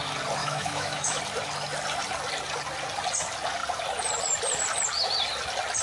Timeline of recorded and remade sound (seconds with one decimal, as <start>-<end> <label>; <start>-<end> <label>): 0.0-0.4 recorded; 0.4-1.2 remade; 1.2-5.8 recorded